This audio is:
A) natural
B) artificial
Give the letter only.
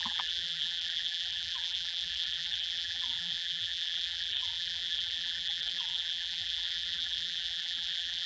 B